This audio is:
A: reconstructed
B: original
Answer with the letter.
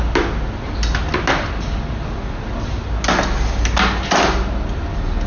B